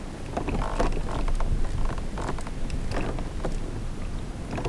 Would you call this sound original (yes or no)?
yes